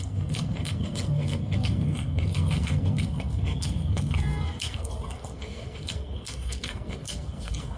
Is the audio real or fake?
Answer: fake